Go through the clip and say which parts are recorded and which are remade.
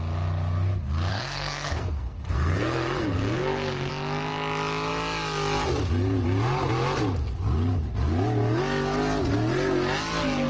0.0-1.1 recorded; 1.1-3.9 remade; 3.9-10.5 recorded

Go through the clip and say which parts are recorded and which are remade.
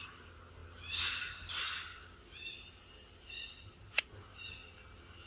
0.0-5.3 recorded